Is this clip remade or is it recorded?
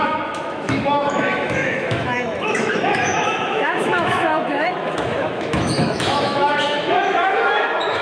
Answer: remade